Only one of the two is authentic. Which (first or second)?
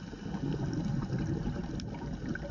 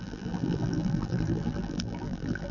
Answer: first